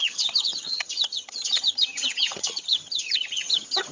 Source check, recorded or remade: remade